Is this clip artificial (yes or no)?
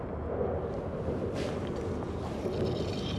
no